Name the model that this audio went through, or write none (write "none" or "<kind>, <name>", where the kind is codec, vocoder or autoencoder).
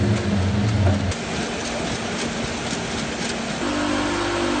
none